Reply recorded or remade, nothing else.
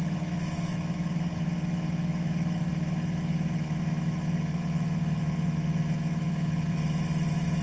remade